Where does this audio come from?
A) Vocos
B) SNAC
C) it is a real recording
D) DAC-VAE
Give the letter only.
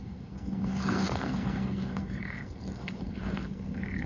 B